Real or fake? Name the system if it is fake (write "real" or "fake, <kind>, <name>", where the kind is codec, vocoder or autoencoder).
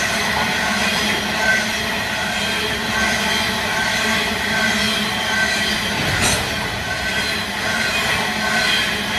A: real